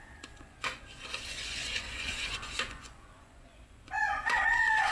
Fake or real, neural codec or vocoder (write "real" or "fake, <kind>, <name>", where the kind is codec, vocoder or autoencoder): fake, vocoder, Vocos